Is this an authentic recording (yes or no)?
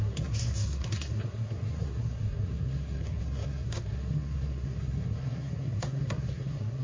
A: no